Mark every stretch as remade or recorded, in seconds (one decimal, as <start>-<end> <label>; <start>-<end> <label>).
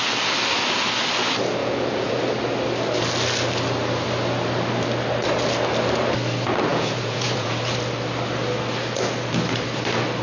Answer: 0.0-1.6 recorded; 1.6-2.1 remade; 2.1-6.7 recorded; 6.7-7.6 remade; 7.6-10.2 recorded